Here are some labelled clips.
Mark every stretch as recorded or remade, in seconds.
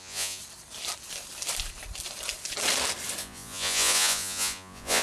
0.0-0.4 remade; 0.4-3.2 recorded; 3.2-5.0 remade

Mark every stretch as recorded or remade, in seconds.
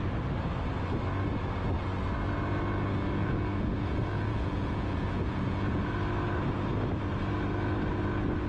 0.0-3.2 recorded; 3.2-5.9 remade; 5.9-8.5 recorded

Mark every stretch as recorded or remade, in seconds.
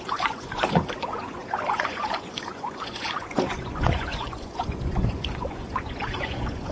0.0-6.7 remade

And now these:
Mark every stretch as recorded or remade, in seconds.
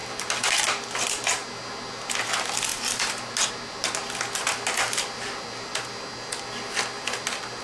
0.0-7.6 recorded